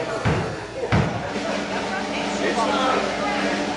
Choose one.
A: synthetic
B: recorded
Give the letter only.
B